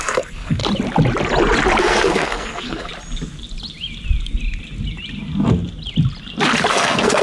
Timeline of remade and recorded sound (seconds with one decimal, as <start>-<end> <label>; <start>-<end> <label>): 0.0-0.6 remade; 0.6-1.8 recorded; 1.8-2.9 remade; 2.9-6.7 recorded; 6.7-7.2 remade